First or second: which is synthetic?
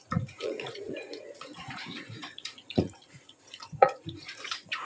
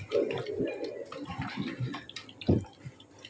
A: first